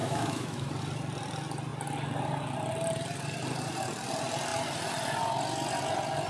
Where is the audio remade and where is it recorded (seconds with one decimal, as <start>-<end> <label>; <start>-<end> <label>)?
0.0-0.7 remade; 0.7-6.3 recorded